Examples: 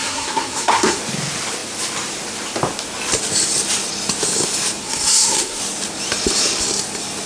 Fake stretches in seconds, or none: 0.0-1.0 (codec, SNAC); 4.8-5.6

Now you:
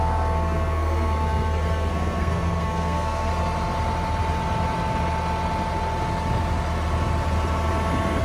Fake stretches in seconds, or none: 0.0-3.3 (codec, SNAC)

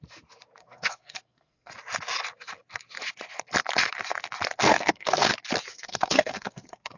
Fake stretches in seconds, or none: 0.6-1.7 (codec, SNAC); 4.6-5.3; 5.7-7.0

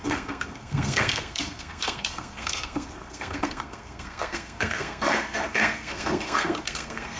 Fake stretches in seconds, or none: 0.0-7.2 (codec, SNAC)

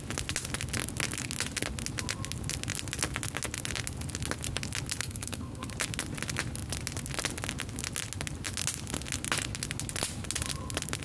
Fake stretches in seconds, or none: 5.0-5.7 (codec, SNAC)

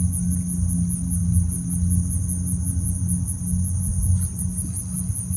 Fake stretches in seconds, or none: none